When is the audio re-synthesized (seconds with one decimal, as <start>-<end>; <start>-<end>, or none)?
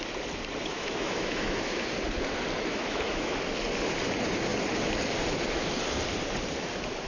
0.7-1.9; 2.7-3.4